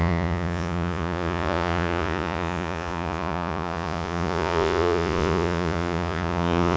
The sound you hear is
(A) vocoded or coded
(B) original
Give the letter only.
A